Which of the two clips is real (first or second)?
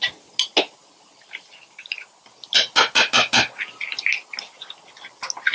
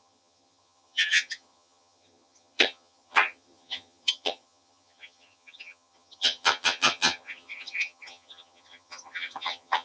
first